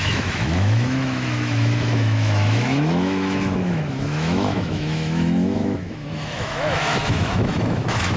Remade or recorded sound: remade